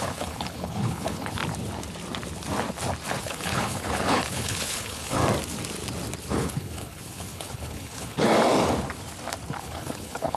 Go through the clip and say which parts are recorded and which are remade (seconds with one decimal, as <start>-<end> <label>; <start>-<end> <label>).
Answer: 0.0-1.4 remade; 1.4-3.2 recorded; 3.2-5.2 remade; 5.2-6.3 recorded; 6.3-8.3 remade; 8.3-9.6 recorded; 9.6-10.4 remade

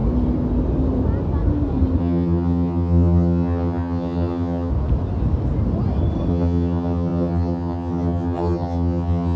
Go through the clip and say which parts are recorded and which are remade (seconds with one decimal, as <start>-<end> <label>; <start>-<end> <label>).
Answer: 0.0-2.0 recorded; 2.0-4.7 remade; 4.7-6.3 recorded; 6.3-9.4 remade

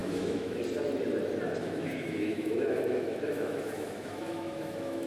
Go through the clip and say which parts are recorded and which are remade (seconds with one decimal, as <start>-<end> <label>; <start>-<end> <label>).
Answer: 0.0-0.6 remade; 0.6-1.6 recorded; 1.6-5.1 remade

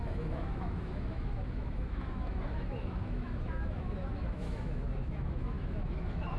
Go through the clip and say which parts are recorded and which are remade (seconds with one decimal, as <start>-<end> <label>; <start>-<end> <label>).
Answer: 0.0-6.4 remade

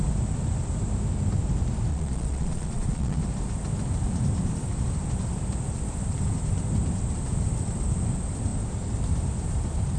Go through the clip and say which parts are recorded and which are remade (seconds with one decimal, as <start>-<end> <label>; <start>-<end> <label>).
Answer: 0.0-1.9 recorded; 1.9-3.2 remade; 3.2-10.0 recorded

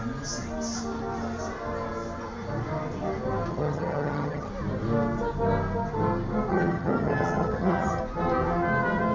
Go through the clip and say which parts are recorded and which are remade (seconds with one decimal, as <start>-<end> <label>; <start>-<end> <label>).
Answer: 0.0-3.5 recorded; 3.5-4.5 remade; 4.5-6.5 recorded; 6.5-8.0 remade; 8.0-9.1 recorded